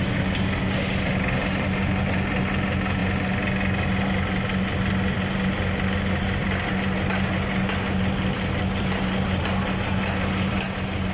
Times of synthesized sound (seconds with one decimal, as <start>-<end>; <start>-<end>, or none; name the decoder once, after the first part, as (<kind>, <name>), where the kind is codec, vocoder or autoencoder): none